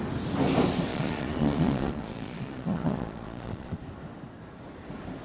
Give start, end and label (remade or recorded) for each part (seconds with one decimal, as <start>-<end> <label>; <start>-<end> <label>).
0.0-0.9 recorded; 0.9-3.8 remade; 3.8-5.2 recorded